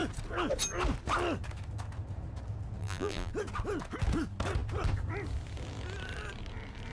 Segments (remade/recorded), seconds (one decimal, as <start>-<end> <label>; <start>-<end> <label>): 0.0-2.8 recorded; 2.8-3.3 remade; 3.3-6.9 recorded